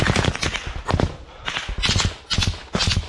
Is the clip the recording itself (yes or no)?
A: yes